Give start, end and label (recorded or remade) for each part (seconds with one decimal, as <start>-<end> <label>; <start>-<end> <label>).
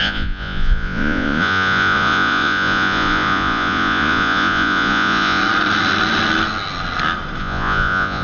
0.0-5.4 remade; 5.4-7.4 recorded; 7.4-8.2 remade